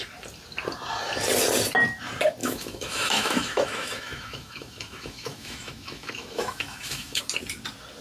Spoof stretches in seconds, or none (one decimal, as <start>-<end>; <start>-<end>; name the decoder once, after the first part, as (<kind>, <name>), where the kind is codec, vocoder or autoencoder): 2.4-7.2 (autoencoder, DAC-VAE)